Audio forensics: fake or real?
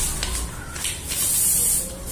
real